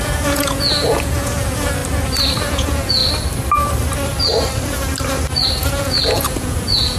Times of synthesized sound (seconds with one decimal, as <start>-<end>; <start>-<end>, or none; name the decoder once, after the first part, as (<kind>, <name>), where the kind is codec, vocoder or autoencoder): 0.0-1.8 (vocoder, Vocos); 2.5-3.0; 5.6-7.0

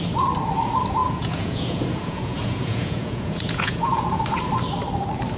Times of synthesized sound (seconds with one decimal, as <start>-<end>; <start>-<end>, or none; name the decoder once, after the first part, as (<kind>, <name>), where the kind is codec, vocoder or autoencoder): 1.0-4.2 (vocoder, Vocos)

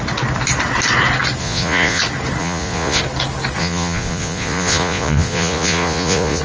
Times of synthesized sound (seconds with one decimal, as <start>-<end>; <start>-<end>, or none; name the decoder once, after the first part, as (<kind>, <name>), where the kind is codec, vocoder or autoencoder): 1.4-2.0 (vocoder, Vocos); 2.4-3.0; 3.6-6.4